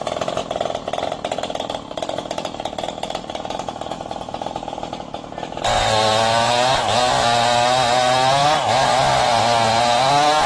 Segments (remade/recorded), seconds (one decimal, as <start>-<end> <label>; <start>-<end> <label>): 0.0-0.4 recorded; 0.4-5.6 remade; 5.6-10.5 recorded